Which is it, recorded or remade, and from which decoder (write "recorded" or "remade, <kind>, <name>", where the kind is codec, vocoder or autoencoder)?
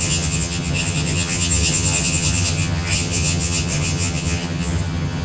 remade, vocoder, HiFi-GAN